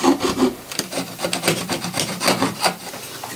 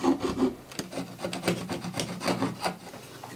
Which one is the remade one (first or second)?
first